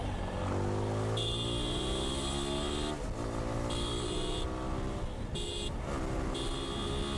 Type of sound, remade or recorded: recorded